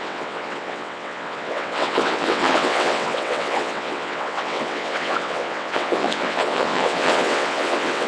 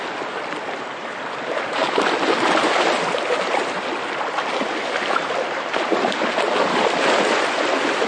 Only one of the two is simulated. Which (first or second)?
first